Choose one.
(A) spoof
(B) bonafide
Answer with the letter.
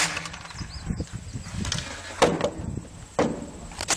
B